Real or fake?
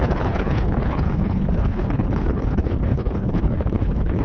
fake